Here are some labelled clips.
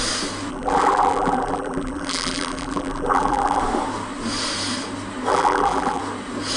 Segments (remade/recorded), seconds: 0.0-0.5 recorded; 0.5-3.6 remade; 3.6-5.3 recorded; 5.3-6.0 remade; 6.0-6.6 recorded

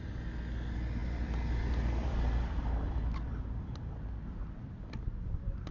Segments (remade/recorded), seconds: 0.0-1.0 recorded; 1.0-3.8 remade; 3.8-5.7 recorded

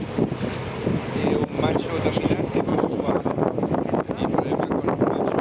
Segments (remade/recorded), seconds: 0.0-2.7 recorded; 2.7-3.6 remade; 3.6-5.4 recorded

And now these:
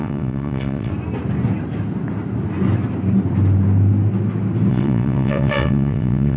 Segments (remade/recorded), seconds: 0.0-0.9 remade; 0.9-4.7 recorded; 4.7-6.4 remade

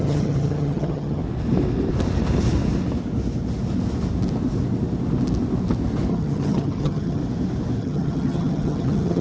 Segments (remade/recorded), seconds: 0.0-1.2 remade; 1.2-6.1 recorded; 6.1-7.2 remade; 7.2-7.8 recorded; 7.8-9.2 remade

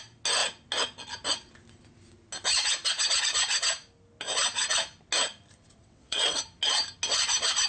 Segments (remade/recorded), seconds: 0.0-5.8 recorded; 5.8-6.4 remade; 6.4-7.7 recorded

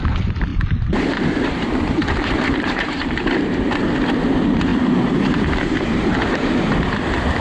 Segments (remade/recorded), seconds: 0.0-0.5 recorded; 0.5-3.8 remade; 3.8-4.7 recorded; 4.7-6.5 remade; 6.5-7.4 recorded